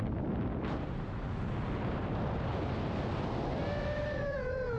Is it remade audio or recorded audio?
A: recorded